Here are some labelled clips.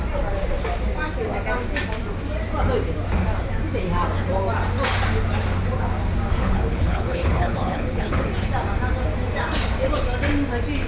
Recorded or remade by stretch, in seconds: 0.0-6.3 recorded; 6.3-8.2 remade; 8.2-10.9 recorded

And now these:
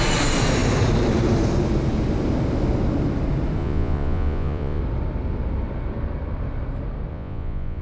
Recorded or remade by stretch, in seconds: 0.0-3.6 recorded; 3.6-4.8 remade; 4.8-7.1 recorded; 7.1-7.8 remade